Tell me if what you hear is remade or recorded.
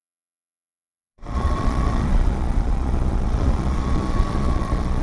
remade